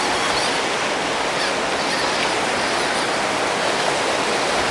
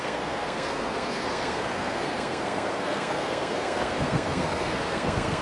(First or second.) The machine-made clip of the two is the second